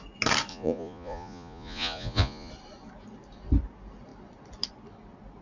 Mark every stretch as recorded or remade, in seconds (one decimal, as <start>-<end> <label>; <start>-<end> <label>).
0.0-0.5 recorded; 0.5-2.5 remade; 2.5-5.4 recorded